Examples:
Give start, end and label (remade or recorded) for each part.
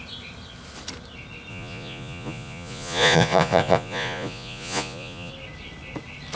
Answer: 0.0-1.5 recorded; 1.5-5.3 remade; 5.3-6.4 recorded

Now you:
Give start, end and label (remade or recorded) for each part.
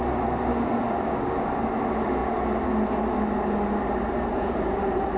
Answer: 0.0-0.5 recorded; 0.5-1.5 remade; 1.5-4.3 recorded; 4.3-4.8 remade; 4.8-5.2 recorded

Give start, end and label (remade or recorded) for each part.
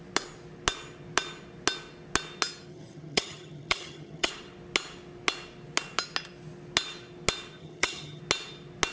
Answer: 0.0-2.7 recorded; 2.7-4.3 remade; 4.3-7.6 recorded; 7.6-8.2 remade; 8.2-8.9 recorded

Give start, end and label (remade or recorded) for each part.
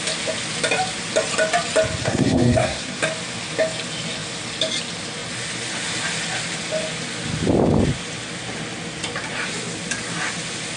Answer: 0.0-2.0 recorded; 2.0-3.0 remade; 3.0-10.8 recorded